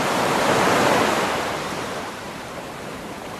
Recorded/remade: remade